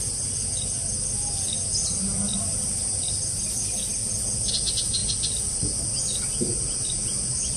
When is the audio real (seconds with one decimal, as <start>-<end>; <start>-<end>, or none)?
0.0-7.6